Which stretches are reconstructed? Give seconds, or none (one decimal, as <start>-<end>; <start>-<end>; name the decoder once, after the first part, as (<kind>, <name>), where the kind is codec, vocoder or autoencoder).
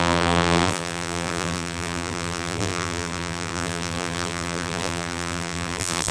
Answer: 0.0-6.1 (vocoder, BigVGAN v2)